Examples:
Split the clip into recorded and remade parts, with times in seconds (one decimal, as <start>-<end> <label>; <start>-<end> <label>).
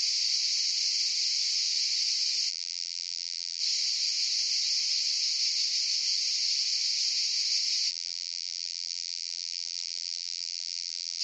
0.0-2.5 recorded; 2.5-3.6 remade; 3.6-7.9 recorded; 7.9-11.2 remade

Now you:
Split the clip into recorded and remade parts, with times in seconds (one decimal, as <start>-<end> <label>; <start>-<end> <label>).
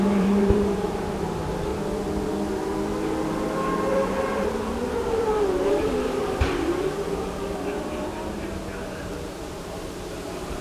0.0-1.7 remade; 1.7-3.9 recorded; 3.9-10.6 remade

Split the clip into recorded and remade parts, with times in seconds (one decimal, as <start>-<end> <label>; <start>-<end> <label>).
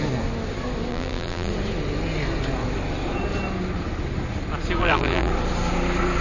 0.0-0.9 recorded; 0.9-1.5 remade; 1.5-4.8 recorded; 4.8-5.3 remade; 5.3-6.2 recorded